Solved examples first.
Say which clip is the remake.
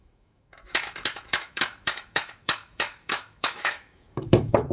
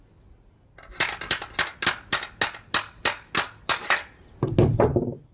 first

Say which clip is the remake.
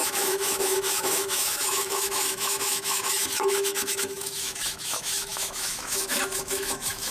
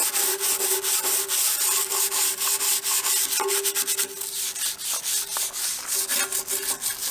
first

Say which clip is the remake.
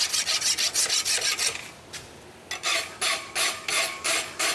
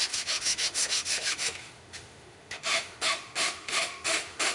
second